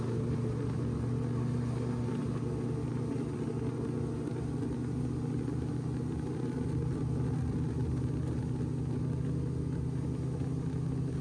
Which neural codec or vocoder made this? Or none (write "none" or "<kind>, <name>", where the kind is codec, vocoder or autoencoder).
none